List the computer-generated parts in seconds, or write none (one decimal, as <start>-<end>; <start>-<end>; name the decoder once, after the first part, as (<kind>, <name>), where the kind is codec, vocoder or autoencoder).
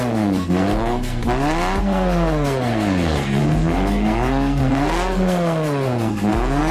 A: 0.0-1.2 (codec, SNAC); 1.8-6.7